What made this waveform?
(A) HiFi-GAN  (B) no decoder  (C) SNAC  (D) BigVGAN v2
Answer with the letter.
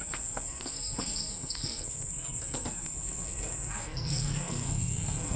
C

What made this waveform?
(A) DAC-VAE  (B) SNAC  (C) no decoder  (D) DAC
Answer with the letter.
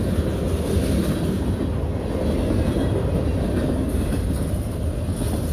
C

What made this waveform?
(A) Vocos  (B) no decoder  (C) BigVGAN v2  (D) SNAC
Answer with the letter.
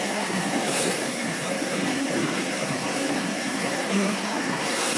D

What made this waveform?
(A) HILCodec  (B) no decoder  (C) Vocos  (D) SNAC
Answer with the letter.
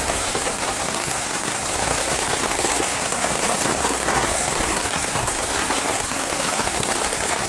D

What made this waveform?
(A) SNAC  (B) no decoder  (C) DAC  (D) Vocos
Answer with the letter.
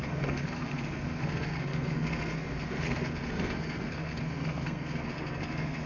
A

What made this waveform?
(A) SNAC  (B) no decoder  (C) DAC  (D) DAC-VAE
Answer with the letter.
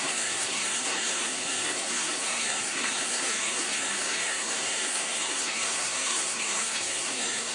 A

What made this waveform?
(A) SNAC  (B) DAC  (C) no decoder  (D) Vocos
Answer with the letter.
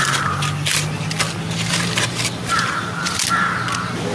C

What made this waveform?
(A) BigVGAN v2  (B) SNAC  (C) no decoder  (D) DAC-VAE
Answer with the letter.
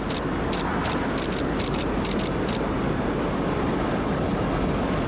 C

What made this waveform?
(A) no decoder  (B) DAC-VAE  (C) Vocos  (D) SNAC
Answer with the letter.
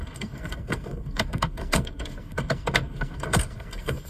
D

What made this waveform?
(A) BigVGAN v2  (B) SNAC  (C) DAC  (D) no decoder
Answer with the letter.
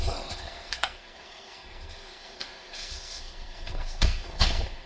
B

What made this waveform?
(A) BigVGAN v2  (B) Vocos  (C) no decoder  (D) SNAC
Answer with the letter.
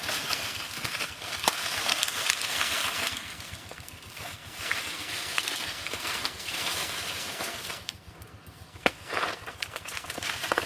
D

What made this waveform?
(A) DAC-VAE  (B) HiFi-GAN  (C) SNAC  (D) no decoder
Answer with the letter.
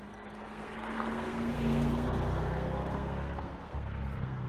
C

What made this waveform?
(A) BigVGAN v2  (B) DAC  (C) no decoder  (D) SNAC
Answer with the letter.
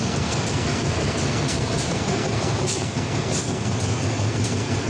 D